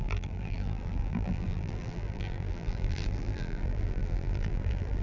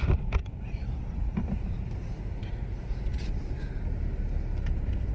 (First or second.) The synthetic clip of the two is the first